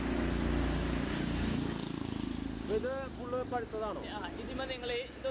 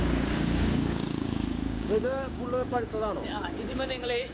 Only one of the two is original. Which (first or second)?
first